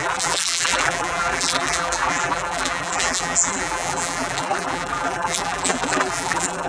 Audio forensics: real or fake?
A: fake